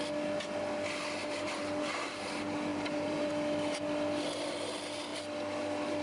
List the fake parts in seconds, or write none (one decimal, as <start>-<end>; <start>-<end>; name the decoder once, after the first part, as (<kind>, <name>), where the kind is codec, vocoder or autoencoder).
1.2-2.2 (vocoder, BigVGAN v2); 2.7-3.3